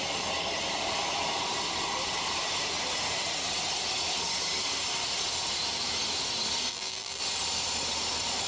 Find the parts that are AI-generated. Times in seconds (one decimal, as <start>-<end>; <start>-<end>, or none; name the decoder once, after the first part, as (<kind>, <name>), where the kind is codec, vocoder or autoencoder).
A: 6.7-7.2 (vocoder, BigVGAN v2)